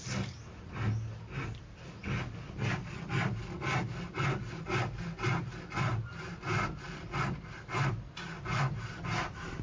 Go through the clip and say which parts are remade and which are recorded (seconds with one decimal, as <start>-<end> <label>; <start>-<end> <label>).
0.0-9.6 recorded